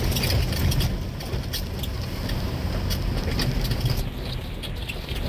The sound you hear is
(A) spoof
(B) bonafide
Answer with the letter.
B